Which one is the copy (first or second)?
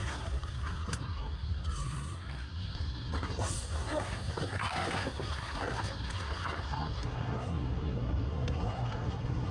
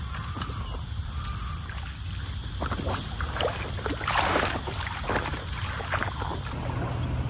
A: first